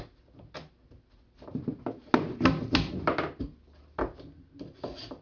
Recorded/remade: recorded